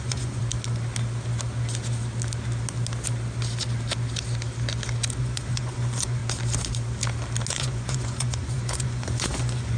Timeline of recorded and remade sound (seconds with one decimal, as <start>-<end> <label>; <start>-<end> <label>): 0.0-0.4 remade; 0.4-5.2 recorded; 5.2-6.2 remade; 6.2-7.5 recorded; 7.5-9.8 remade